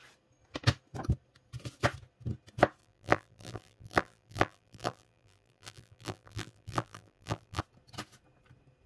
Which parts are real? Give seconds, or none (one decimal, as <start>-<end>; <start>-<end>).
0.0-2.8; 7.6-8.9